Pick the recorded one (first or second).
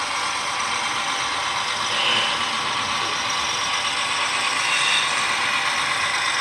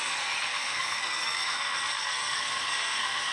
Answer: first